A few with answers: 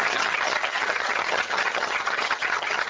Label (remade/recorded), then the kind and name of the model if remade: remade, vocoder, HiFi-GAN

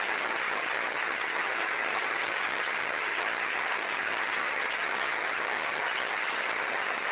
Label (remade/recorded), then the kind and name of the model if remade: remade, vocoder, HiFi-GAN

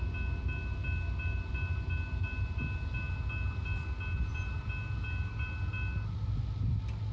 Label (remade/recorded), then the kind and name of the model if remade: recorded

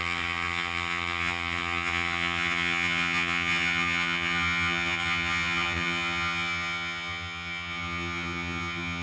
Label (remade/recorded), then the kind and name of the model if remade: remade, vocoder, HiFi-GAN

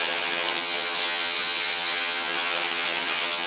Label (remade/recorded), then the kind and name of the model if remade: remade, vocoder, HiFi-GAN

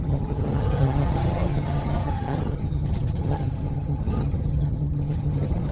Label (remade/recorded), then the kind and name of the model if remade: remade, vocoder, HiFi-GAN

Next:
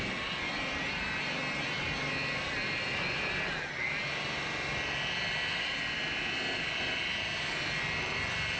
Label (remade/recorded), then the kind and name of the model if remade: recorded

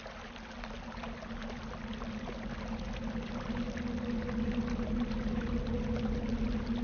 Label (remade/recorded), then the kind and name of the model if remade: recorded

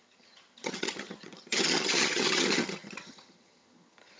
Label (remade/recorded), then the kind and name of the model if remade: remade, vocoder, HiFi-GAN